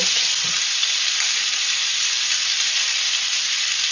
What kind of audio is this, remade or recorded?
recorded